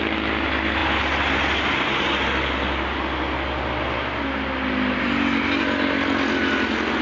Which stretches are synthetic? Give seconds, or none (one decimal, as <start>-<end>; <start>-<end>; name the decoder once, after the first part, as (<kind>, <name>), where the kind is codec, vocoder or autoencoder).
none